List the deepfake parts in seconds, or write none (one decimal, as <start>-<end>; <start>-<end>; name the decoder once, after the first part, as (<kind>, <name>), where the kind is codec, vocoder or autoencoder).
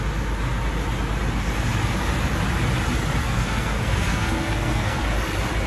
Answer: 3.2-5.0 (codec, SNAC)